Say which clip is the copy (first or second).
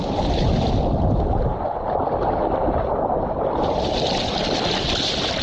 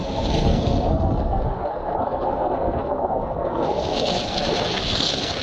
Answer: second